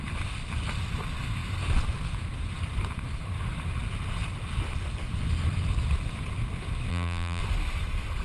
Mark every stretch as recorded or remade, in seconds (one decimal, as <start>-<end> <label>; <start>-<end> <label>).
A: 0.0-6.9 recorded; 6.9-7.4 remade; 7.4-8.2 recorded